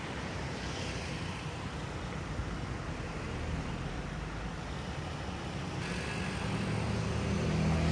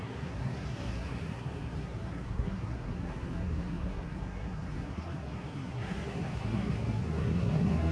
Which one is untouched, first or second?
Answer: first